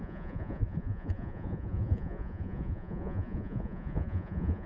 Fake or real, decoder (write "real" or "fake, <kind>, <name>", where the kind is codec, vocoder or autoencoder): fake, vocoder, Vocos